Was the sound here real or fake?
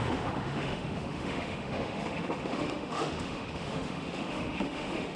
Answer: fake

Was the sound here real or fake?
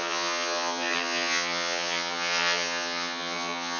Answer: fake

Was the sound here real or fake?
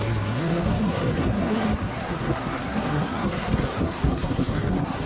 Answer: fake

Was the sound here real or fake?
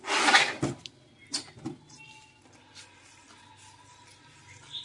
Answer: real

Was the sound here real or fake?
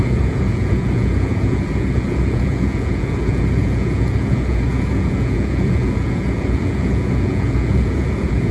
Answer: fake